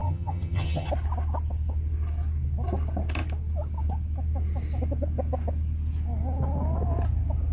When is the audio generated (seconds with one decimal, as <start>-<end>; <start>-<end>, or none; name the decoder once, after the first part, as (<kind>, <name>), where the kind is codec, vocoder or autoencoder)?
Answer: 0.0-0.9 (vocoder, HiFi-GAN)